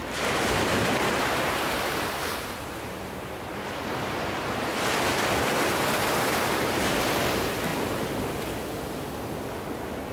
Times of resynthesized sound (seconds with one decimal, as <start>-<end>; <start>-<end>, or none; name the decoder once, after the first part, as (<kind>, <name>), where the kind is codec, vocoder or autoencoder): 0.0-4.7 (vocoder, BigVGAN v2); 6.5-7.7; 9.7-10.1